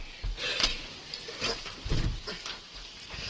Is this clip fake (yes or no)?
no